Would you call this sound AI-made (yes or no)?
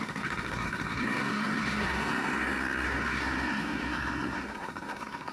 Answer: yes